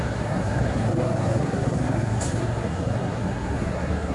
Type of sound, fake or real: fake